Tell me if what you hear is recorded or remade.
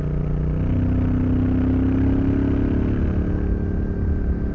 recorded